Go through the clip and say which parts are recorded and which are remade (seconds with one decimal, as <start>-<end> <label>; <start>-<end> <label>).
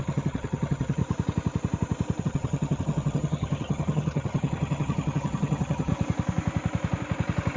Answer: 0.0-1.0 remade; 1.0-2.2 recorded; 2.2-5.9 remade; 5.9-7.6 recorded